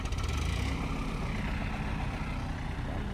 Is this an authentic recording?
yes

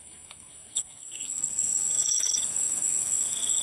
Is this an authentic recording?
no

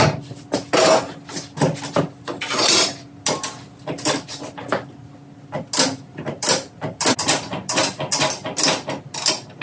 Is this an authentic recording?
yes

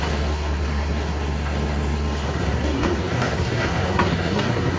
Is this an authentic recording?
no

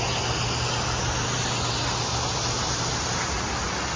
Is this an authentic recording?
yes